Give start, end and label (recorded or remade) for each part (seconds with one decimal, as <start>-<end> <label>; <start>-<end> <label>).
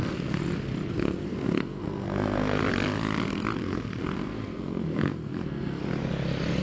0.0-0.4 remade; 0.4-0.9 recorded; 0.9-2.6 remade; 2.6-3.6 recorded; 3.6-5.8 remade; 5.8-6.6 recorded